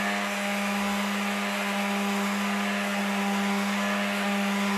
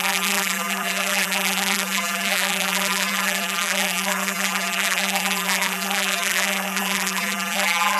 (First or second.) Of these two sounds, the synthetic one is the second